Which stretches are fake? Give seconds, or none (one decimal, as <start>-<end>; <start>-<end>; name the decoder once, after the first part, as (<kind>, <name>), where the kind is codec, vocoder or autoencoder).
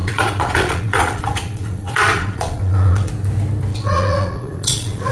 0.0-3.1 (vocoder, Vocos); 3.7-5.1